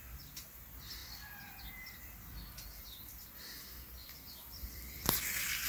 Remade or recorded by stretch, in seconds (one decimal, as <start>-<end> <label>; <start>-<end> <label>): 0.0-1.0 recorded; 1.0-1.6 remade; 1.6-2.3 recorded; 2.3-3.4 remade; 3.4-4.0 recorded; 4.0-5.2 remade; 5.2-5.7 recorded

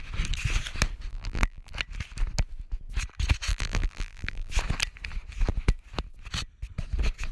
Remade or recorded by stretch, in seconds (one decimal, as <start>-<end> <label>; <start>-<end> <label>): 0.0-1.1 recorded; 1.1-1.7 remade; 1.7-3.5 recorded; 3.5-4.5 remade; 4.5-7.3 recorded

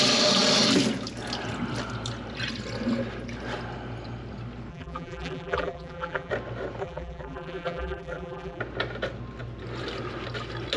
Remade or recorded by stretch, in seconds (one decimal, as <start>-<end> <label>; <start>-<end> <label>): 0.0-4.7 recorded; 4.7-6.3 remade; 6.3-6.8 recorded; 6.8-8.6 remade; 8.6-10.8 recorded

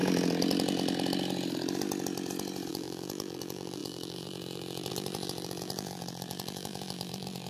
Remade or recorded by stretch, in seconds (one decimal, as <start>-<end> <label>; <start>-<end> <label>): 0.0-2.7 recorded; 2.7-7.5 remade

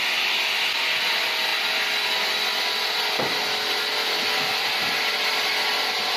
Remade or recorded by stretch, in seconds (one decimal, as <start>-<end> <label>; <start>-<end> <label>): 0.0-6.2 recorded

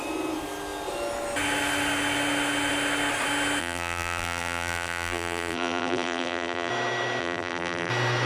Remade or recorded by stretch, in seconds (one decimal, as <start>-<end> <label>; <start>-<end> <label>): 0.0-3.6 recorded; 3.6-6.7 remade; 6.7-7.2 recorded; 7.2-7.9 remade; 7.9-8.3 recorded

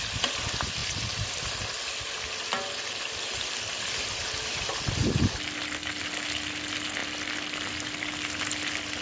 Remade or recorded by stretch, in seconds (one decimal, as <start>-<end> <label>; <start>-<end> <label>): 0.0-9.0 recorded

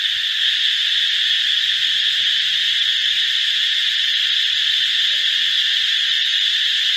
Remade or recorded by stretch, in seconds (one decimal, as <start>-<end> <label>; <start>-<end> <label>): 0.0-2.6 recorded; 2.6-3.9 remade; 3.9-7.0 recorded